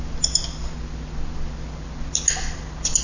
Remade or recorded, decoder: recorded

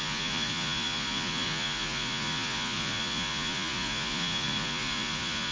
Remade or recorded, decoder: remade, vocoder, Vocos